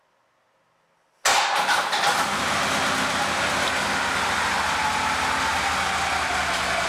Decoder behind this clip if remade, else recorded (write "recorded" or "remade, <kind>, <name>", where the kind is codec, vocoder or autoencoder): recorded